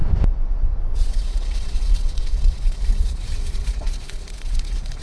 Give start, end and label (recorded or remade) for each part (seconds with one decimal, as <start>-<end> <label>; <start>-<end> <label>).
0.0-0.8 recorded; 0.8-5.0 remade